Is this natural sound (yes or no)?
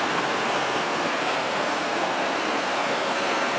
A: no